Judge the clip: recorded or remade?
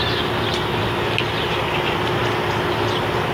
recorded